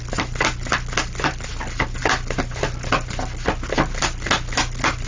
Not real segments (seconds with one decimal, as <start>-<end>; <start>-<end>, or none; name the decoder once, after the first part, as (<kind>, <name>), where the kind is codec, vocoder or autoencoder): none